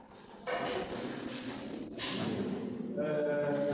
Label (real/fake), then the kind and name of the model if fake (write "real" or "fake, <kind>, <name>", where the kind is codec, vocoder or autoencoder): real